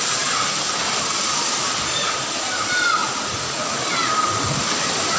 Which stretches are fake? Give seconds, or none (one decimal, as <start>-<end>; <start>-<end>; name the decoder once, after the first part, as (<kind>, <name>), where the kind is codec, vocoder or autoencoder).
3.0-3.8 (vocoder, Vocos)